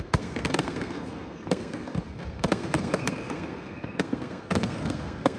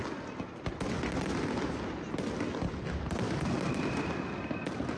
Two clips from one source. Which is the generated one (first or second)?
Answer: first